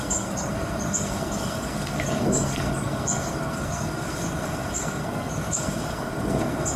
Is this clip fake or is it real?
fake